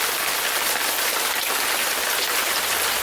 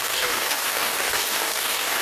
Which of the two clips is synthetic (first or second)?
second